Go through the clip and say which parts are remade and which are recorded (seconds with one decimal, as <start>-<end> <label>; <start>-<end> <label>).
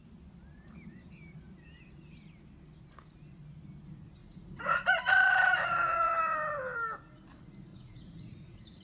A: 0.0-4.2 recorded; 4.2-6.1 remade; 6.1-7.7 recorded; 7.7-8.8 remade